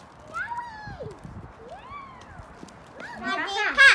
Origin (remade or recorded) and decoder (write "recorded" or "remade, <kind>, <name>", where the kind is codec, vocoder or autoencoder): recorded